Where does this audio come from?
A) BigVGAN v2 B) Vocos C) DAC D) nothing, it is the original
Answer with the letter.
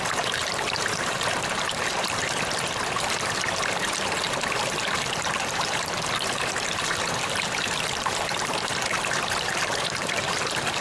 A